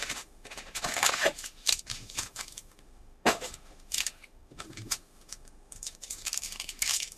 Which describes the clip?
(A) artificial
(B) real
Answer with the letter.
A